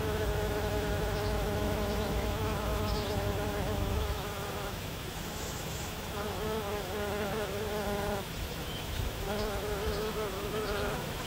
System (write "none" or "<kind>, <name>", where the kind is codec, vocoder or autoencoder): autoencoder, DAC-VAE